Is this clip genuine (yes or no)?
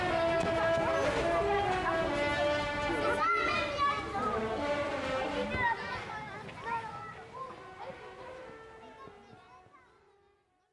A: yes